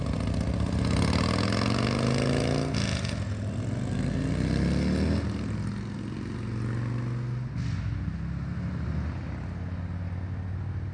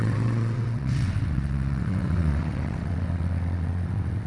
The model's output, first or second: second